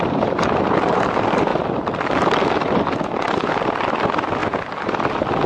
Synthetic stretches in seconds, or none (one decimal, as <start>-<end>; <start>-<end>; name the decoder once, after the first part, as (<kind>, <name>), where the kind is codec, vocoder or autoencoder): none